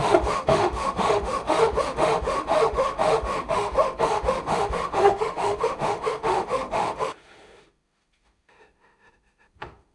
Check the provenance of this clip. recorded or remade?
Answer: remade